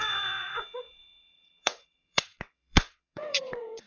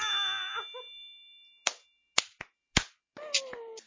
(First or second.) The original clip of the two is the second